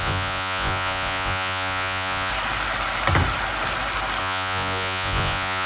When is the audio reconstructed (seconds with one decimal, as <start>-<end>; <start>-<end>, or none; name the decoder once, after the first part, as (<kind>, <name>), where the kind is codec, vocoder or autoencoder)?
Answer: 0.0-2.3 (vocoder, Vocos); 4.2-5.7